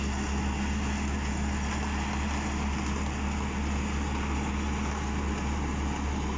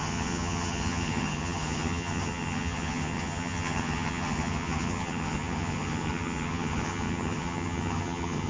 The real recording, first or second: first